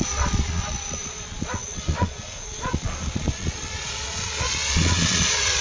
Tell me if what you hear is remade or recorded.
remade